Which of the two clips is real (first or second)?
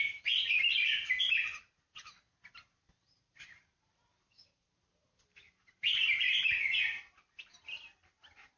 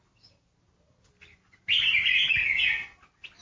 second